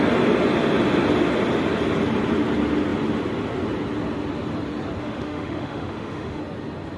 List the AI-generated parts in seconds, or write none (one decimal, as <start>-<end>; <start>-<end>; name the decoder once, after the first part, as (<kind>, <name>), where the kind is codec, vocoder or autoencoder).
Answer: 5.0-6.4 (autoencoder, DAC-VAE)